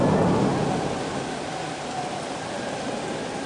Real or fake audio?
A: real